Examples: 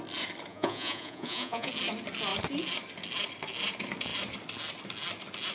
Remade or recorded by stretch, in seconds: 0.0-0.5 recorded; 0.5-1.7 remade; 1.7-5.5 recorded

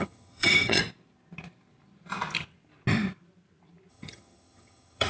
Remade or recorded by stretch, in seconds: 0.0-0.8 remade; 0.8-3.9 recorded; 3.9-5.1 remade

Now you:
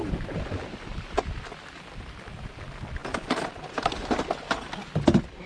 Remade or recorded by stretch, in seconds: 0.0-5.5 recorded

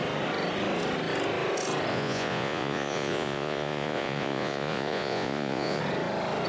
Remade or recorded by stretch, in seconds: 0.0-1.9 recorded; 1.9-5.8 remade; 5.8-6.5 recorded

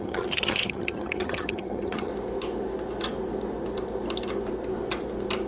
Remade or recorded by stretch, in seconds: 0.0-2.1 remade; 2.1-5.5 recorded

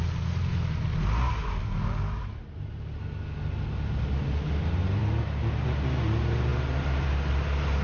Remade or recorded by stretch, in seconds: 0.0-7.8 recorded